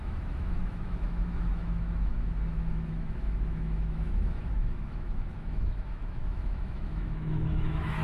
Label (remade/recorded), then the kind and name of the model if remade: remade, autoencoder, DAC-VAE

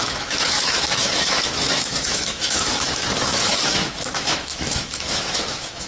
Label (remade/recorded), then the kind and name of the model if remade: remade, autoencoder, DAC-VAE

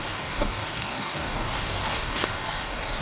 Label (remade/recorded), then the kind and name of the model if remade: remade, codec, DAC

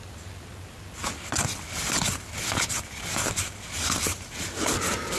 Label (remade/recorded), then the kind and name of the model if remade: recorded